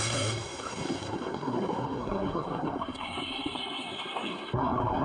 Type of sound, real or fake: fake